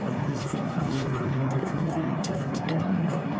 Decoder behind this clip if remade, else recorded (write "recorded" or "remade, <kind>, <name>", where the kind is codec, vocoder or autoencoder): remade, codec, SNAC